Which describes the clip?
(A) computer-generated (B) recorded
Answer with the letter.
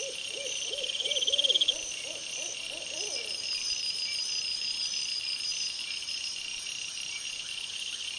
A